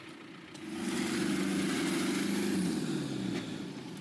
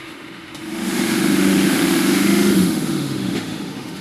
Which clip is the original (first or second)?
first